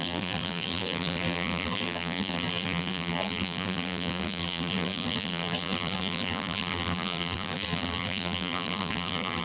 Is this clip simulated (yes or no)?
yes